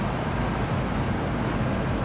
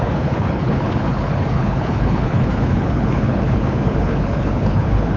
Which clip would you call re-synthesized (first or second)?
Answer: second